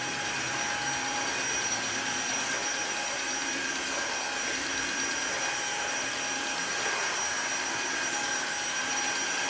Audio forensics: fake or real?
real